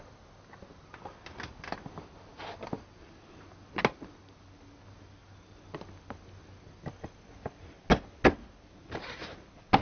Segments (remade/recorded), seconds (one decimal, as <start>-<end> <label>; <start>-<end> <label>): 0.0-9.8 recorded